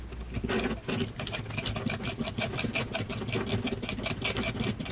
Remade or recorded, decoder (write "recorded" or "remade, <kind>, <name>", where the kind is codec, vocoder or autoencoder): recorded